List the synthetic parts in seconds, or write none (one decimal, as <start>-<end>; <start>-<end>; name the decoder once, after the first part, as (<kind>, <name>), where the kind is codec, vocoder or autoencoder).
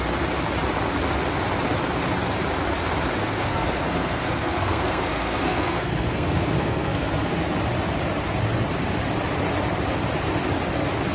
3.2-7.4 (codec, SNAC)